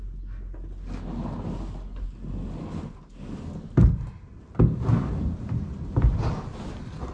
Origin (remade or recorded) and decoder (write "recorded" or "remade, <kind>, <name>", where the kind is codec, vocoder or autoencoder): recorded